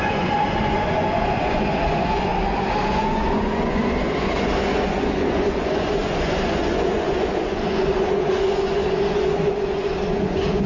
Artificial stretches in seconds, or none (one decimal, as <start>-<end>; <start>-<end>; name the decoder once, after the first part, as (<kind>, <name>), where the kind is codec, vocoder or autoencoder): 0.0-2.3 (vocoder, Vocos); 2.9-10.7